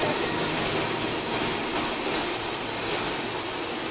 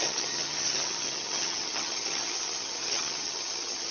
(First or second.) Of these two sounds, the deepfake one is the second